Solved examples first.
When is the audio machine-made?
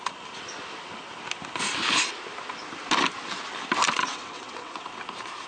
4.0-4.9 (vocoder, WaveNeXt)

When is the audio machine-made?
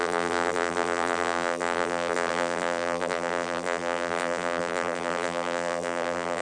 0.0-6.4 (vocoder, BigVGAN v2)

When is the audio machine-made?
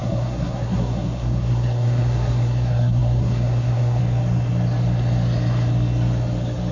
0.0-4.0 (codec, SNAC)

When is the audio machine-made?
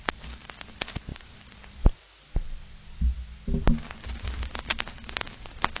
none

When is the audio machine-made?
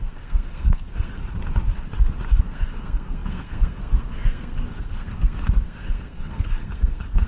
0.0-1.2 (codec, SNAC); 2.4-7.3